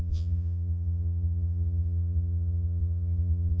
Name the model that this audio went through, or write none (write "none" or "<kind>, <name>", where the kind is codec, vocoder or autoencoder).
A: vocoder, Vocos